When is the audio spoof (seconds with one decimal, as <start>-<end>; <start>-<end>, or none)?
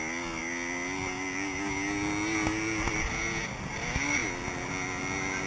none